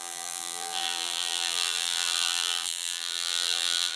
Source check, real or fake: fake